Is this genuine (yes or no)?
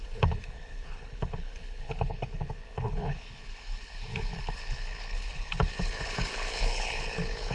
no